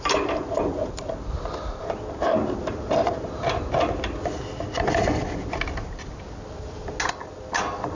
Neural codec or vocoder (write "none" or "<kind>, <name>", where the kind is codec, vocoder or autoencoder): none